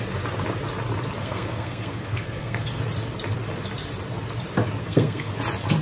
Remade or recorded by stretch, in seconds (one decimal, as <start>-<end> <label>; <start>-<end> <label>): 0.0-1.2 recorded; 1.2-2.8 remade; 2.8-4.8 recorded; 4.8-5.3 remade; 5.3-5.8 recorded